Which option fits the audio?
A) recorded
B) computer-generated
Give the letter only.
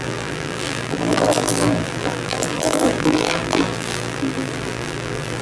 B